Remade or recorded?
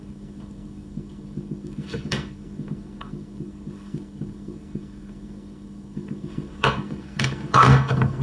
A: remade